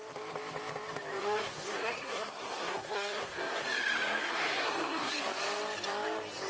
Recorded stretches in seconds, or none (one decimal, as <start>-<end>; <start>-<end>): 0.0-1.2; 3.6-4.2; 5.1-6.5